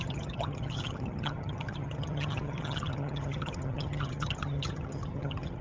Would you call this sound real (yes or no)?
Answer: no